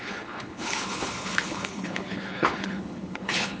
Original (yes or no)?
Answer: no